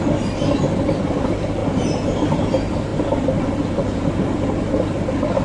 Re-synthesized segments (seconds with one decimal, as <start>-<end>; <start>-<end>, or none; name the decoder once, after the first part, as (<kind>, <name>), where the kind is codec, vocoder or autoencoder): 0.0-5.4 (vocoder, BigVGAN v2)

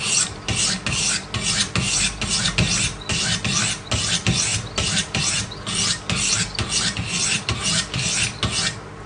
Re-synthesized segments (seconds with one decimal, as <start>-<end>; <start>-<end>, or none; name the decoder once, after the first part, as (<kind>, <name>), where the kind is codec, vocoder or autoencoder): none

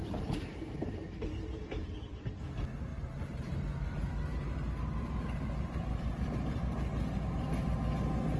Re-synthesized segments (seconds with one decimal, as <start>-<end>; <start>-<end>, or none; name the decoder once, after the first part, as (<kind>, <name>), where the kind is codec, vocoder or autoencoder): 0.0-0.6 (vocoder, BigVGAN v2); 2.9-7.2

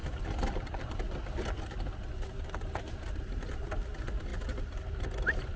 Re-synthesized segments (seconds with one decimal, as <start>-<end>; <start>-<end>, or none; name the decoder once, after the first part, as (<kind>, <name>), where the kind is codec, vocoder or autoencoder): 2.3-5.6 (vocoder, BigVGAN v2)

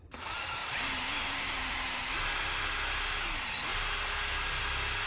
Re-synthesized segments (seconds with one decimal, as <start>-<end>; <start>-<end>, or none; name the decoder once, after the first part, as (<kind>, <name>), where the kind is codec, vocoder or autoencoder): 0.6-2.0 (vocoder, BigVGAN v2)

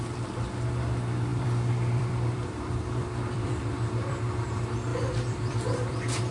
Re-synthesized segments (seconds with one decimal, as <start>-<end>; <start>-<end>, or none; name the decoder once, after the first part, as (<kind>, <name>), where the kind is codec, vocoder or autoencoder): 1.3-4.5 (vocoder, BigVGAN v2); 4.9-6.3